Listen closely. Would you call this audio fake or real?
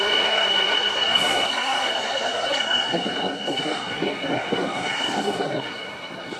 fake